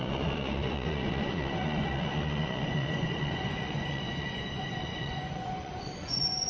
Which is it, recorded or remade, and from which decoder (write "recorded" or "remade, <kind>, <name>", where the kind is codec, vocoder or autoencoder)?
remade, vocoder, Vocos